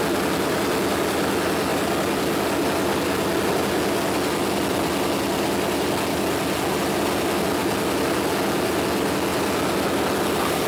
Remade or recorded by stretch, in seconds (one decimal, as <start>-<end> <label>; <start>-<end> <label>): 0.0-10.7 recorded